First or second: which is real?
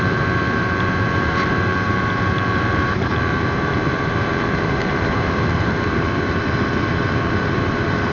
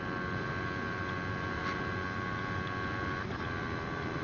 second